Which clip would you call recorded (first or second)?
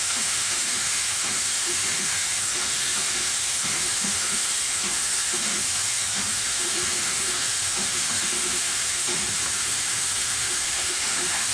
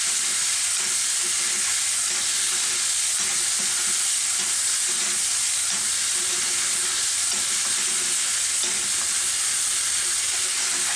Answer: second